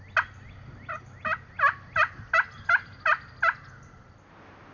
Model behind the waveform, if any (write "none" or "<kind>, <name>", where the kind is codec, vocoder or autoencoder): none